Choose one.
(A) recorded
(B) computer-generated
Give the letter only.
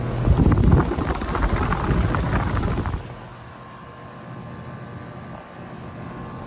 A